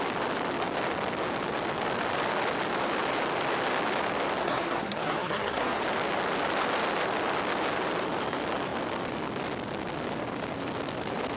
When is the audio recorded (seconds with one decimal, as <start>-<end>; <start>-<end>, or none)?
0.0-4.4; 5.8-11.4